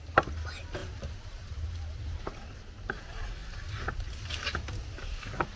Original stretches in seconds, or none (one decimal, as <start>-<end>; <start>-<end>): 0.0-0.8; 3.0-5.6